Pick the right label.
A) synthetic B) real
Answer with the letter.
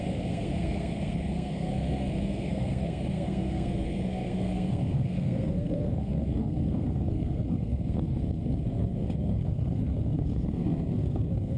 A